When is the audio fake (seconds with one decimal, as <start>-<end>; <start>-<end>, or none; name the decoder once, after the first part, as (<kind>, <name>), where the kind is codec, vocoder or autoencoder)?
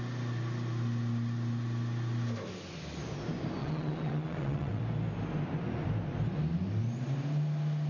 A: 3.6-4.8 (vocoder, WaveNeXt)